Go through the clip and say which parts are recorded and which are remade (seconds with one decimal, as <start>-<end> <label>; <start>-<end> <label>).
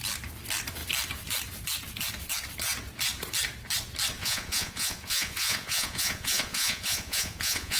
0.0-4.2 recorded; 4.2-7.8 remade